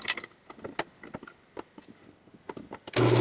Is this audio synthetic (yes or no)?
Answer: no